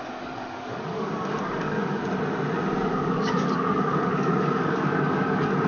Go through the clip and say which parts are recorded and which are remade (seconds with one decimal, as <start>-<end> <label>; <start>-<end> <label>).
0.0-2.0 remade; 2.0-2.9 recorded; 2.9-5.7 remade